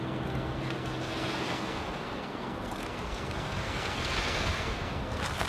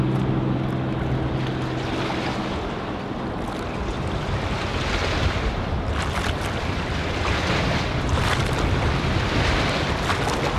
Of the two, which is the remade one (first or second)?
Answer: first